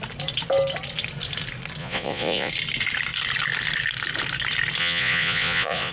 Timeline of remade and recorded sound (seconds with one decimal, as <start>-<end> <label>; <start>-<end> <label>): 0.0-1.8 recorded; 1.8-2.5 remade; 2.5-4.8 recorded; 4.8-5.9 remade